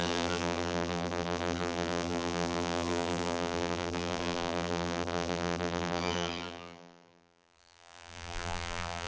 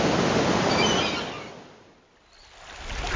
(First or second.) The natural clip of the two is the second